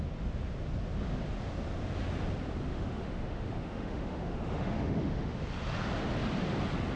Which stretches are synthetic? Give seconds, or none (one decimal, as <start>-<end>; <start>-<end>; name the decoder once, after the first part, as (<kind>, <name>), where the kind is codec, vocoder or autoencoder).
2.7-5.4 (autoencoder, DAC-VAE)